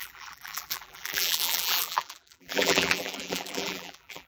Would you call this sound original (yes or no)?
no